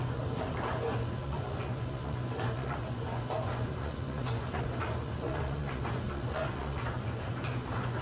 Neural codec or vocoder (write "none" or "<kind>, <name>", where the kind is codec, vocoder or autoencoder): vocoder, Vocos